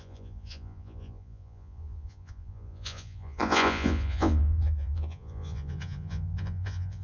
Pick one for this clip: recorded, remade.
remade